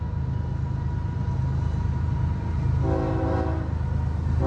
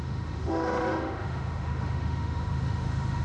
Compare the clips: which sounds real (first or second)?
first